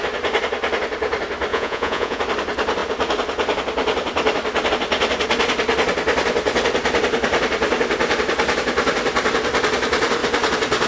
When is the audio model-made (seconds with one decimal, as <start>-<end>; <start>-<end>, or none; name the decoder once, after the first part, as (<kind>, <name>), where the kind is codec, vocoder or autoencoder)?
1.5-2.2 (vocoder, Vocos)